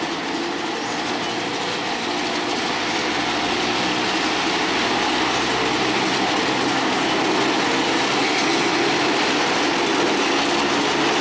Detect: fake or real real